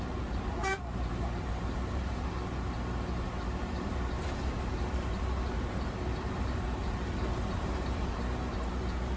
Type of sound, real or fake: fake